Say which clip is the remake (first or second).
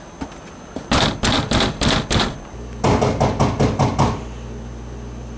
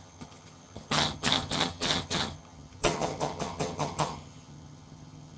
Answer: second